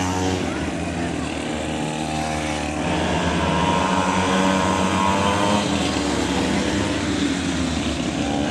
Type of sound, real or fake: real